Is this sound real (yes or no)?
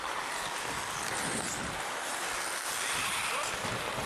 yes